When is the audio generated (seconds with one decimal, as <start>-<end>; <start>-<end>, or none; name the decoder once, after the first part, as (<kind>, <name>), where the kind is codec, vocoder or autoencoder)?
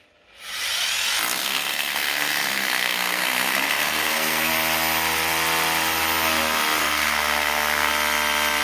1.4-4.5 (codec, SNAC); 6.8-7.9